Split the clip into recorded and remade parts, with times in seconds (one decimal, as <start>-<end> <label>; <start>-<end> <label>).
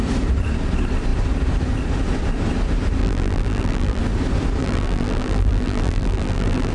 0.0-3.0 recorded; 3.0-4.0 remade; 4.0-4.6 recorded; 4.6-6.7 remade